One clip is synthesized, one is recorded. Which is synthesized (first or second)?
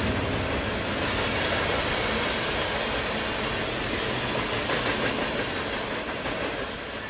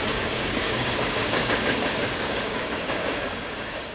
second